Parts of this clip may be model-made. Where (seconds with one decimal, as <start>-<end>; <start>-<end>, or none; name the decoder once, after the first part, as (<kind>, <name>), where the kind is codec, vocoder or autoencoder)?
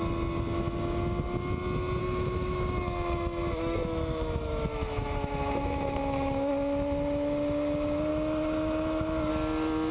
2.0-6.5 (autoencoder, DAC-VAE); 8.1-9.3